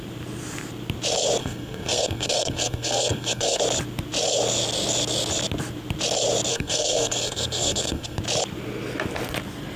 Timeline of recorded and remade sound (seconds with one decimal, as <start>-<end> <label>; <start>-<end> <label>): 0.0-1.4 recorded; 1.4-3.6 remade; 3.6-6.5 recorded; 6.5-8.2 remade; 8.2-9.8 recorded